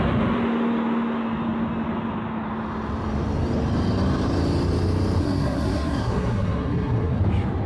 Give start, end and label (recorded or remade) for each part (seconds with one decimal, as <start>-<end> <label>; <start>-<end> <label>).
0.0-5.2 recorded; 5.2-7.2 remade; 7.2-7.7 recorded